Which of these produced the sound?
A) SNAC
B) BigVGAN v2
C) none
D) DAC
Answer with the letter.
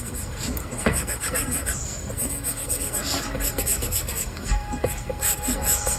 A